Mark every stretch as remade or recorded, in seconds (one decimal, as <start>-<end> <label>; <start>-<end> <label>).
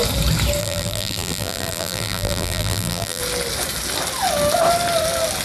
0.0-0.6 recorded; 0.6-3.2 remade; 3.2-5.4 recorded